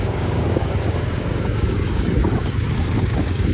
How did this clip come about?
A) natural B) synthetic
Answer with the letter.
B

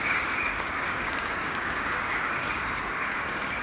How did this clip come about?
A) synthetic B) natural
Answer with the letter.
A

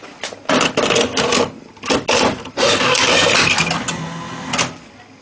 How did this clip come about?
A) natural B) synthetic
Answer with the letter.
A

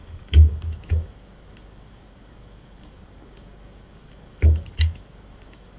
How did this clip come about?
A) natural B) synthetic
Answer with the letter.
B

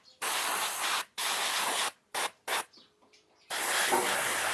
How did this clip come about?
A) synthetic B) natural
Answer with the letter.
B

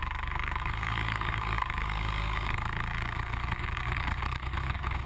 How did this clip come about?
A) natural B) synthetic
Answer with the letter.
B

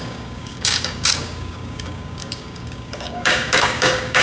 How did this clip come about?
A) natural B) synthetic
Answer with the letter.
B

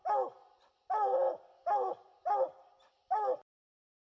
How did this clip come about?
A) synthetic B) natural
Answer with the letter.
B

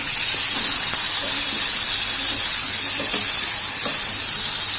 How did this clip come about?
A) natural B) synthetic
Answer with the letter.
A